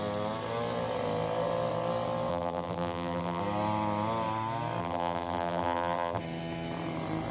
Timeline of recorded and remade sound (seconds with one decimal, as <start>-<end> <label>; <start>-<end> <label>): 0.0-2.3 recorded; 2.3-3.4 remade; 3.4-4.8 recorded; 4.8-6.2 remade; 6.2-7.3 recorded